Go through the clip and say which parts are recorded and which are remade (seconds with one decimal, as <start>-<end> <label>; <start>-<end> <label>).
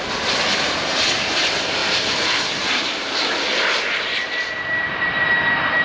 0.0-5.8 recorded